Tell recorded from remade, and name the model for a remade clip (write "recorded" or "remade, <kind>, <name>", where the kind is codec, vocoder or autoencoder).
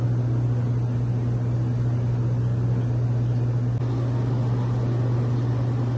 recorded